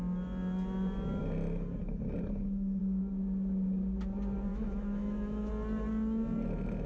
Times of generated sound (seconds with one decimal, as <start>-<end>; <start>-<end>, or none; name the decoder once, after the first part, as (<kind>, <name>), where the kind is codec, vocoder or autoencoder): 4.5-5.5 (autoencoder, DAC-VAE)